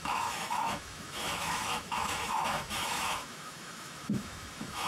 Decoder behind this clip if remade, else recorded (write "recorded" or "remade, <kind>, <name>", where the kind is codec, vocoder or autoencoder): remade, autoencoder, DAC-VAE